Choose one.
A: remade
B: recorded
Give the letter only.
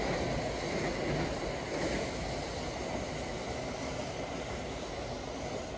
B